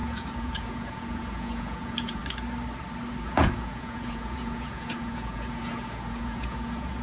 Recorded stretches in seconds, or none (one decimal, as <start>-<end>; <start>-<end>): 2.2-3.2